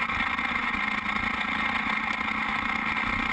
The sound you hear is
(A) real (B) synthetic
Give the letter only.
A